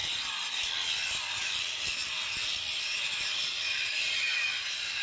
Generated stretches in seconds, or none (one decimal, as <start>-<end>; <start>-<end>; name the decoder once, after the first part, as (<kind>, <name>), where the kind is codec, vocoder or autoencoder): none